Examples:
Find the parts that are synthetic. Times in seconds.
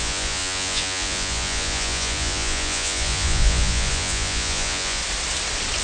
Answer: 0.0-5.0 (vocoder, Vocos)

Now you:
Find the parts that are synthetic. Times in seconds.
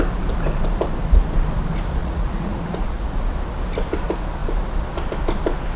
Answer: 2.0-3.2 (vocoder, Vocos)